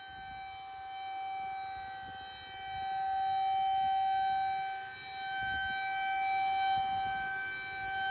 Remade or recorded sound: recorded